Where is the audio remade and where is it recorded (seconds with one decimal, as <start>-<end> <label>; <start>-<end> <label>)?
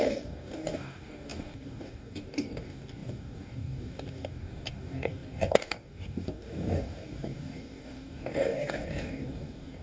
0.0-9.8 remade